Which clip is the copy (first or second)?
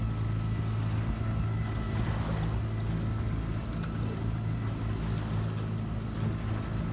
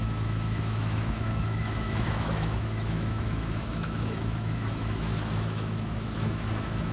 second